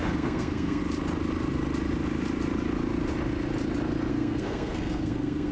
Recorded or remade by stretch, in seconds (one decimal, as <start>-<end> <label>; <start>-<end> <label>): 0.0-0.8 remade; 0.8-4.1 recorded; 4.1-5.5 remade